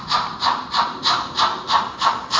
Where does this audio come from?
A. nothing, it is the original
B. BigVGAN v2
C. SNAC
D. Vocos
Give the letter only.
B